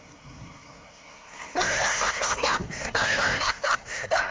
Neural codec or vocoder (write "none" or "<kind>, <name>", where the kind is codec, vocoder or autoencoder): codec, SNAC